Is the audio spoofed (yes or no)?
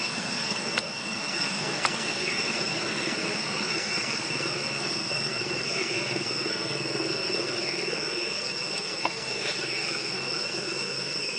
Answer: yes